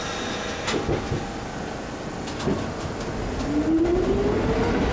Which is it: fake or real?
real